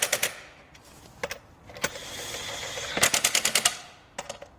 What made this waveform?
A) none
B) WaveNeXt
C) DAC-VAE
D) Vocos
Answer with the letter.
A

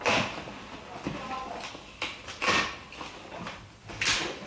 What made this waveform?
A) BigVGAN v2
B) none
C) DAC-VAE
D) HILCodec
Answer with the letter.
B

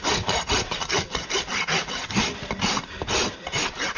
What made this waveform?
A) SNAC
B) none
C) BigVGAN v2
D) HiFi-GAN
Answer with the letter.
B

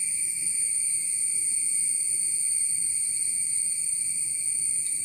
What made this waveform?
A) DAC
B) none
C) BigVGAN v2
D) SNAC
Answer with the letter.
B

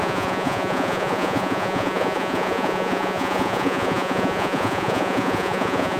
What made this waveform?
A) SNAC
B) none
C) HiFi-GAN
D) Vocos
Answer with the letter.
D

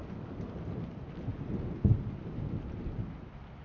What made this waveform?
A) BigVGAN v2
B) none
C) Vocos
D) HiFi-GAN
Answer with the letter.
B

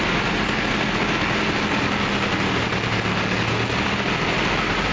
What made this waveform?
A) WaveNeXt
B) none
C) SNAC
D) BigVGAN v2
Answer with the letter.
B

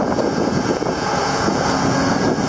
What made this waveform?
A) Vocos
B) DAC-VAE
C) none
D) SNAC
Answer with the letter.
A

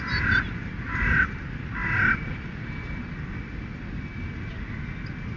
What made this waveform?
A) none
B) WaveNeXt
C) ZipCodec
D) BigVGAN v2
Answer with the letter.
A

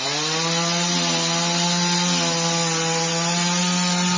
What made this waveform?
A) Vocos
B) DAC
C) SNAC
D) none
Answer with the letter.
D